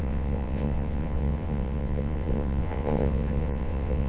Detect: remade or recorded remade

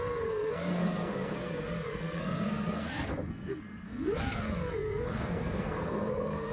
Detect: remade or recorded remade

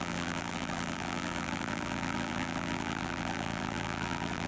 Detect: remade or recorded remade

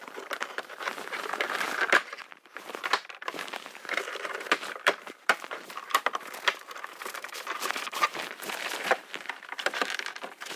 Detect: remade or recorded remade